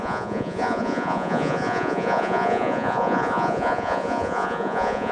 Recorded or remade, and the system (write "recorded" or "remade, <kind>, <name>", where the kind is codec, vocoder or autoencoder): remade, vocoder, Vocos